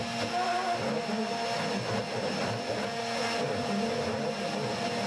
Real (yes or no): yes